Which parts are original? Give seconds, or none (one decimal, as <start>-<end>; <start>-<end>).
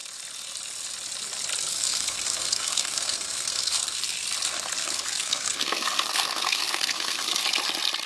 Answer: 0.0-1.7; 4.0-4.8; 7.4-8.1